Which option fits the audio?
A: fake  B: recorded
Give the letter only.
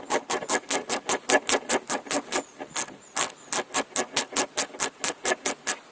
B